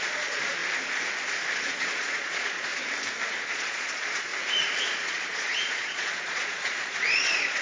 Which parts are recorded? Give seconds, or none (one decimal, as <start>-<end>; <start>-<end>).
0.6-1.6; 2.7-3.5; 4.3-4.8

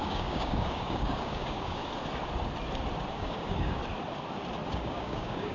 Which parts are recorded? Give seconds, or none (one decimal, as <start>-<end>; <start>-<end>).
1.8-3.1; 3.8-4.7

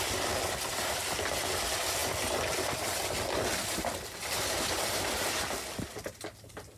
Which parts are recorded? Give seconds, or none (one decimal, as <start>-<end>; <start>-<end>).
0.0-6.8

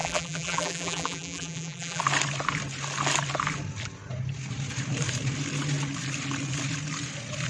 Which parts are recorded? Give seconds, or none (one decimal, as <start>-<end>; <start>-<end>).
2.0-7.5

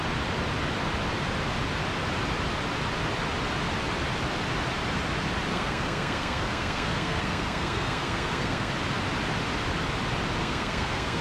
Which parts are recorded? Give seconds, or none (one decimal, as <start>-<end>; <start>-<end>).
0.0-5.5; 8.7-10.4